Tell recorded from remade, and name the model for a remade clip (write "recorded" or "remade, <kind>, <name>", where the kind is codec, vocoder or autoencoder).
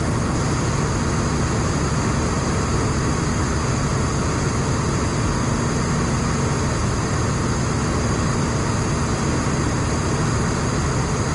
recorded